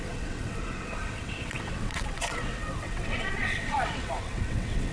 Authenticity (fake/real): fake